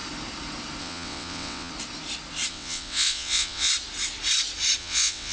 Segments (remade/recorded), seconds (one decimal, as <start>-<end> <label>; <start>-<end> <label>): 0.0-0.8 recorded; 0.8-1.7 remade; 1.7-2.5 recorded; 2.5-3.7 remade; 3.7-4.8 recorded; 4.8-5.3 remade